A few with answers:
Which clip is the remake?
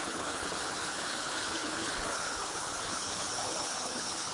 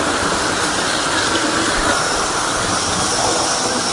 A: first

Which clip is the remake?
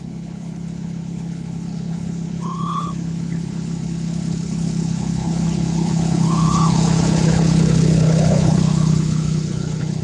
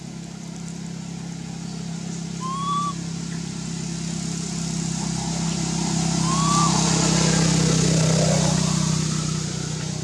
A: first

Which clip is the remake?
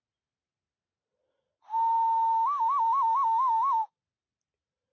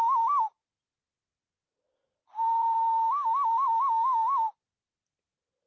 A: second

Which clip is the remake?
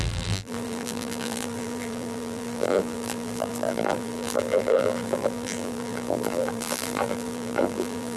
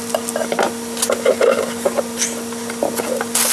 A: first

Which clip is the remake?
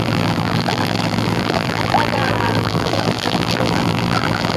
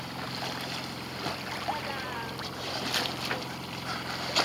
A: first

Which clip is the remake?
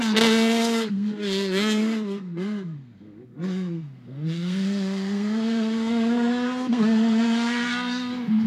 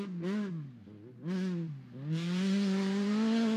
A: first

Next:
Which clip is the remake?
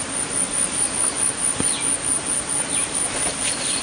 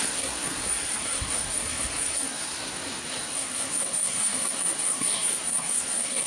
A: second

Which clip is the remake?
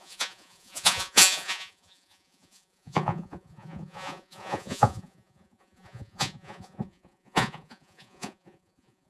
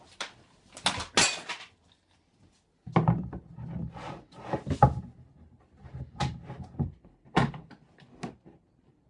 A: first